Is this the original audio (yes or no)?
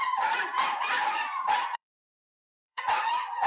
no